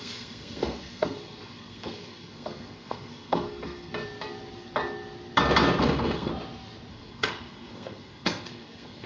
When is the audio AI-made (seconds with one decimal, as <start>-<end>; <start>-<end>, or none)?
0.0-3.9; 5.8-6.3; 6.9-9.1